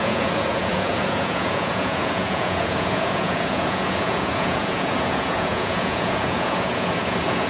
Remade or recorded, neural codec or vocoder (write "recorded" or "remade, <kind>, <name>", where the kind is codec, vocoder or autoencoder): remade, vocoder, Vocos